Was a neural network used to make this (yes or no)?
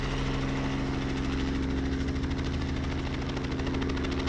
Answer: no